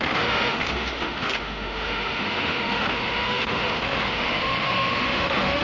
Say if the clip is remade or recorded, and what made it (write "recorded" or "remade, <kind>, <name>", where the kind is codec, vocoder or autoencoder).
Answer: remade, autoencoder, DAC-VAE